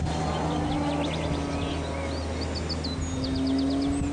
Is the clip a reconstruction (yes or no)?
no